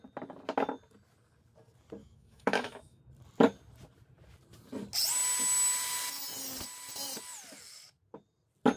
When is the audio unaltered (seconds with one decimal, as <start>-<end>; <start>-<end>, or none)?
0.0-2.0; 3.0-8.8